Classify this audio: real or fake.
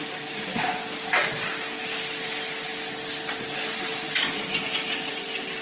real